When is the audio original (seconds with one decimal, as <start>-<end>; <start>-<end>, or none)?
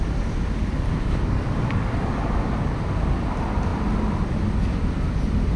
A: 0.0-0.6; 2.5-5.6